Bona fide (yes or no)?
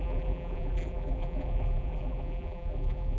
no